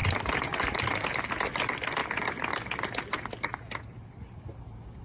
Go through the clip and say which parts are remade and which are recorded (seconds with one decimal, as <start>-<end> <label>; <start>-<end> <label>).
0.0-5.0 recorded